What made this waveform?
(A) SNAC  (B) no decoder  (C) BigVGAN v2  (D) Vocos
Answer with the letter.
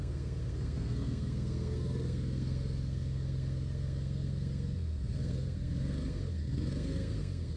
A